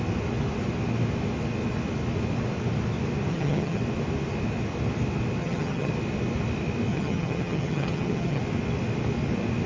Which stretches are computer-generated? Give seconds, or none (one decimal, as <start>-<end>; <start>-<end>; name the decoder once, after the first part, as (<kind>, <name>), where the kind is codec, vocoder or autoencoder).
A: 3.3-3.8 (vocoder, HiFi-GAN); 5.4-5.9; 6.9-8.4